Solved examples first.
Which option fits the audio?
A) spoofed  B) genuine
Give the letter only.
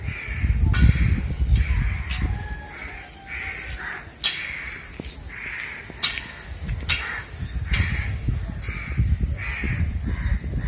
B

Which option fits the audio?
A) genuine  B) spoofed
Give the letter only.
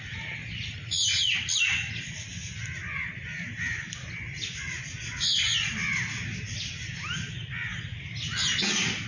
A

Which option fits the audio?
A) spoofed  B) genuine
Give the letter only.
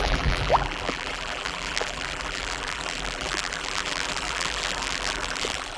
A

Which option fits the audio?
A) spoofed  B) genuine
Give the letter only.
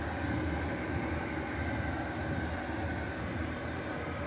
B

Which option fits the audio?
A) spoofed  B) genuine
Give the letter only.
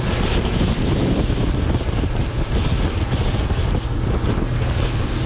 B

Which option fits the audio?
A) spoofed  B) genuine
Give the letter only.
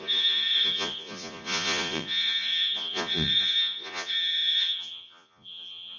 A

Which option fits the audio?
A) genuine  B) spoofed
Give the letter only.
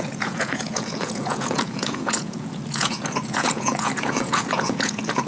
B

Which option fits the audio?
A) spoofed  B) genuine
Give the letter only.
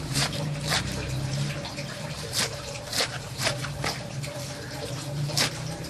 A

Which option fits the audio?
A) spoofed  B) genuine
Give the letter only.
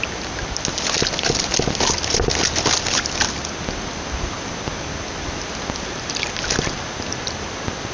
B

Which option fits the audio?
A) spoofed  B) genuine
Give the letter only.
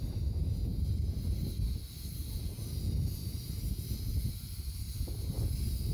B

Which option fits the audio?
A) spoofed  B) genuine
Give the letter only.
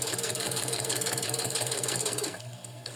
A